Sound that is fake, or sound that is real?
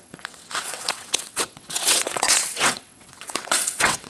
fake